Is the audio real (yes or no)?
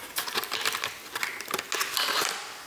yes